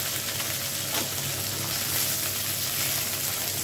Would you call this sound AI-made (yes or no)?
no